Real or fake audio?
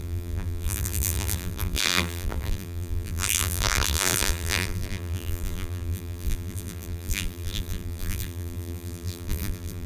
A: fake